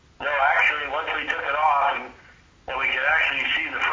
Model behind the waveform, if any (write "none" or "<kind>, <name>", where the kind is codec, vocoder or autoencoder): none